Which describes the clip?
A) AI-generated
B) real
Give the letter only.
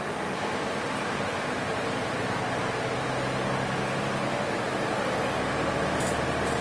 B